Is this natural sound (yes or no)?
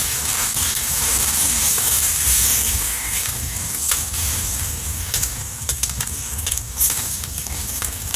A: no